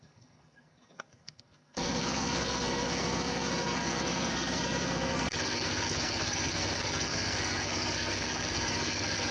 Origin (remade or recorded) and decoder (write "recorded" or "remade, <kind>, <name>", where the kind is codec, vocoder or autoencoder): remade, codec, SNAC